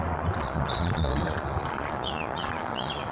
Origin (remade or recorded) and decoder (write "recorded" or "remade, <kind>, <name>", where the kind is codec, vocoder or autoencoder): remade, vocoder, Vocos